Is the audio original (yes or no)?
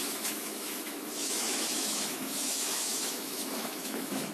no